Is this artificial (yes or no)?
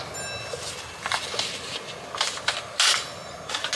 no